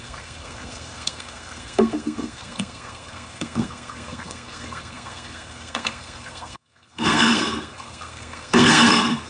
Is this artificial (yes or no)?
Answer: yes